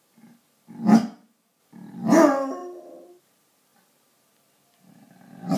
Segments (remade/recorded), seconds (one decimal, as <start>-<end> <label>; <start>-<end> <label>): 0.0-1.0 recorded; 1.0-1.6 remade; 1.6-5.6 recorded